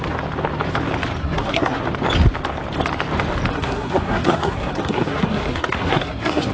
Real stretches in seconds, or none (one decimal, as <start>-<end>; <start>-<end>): 0.0-1.2; 1.8-3.5